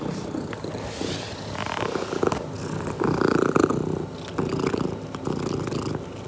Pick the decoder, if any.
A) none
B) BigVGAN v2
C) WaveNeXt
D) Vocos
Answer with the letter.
A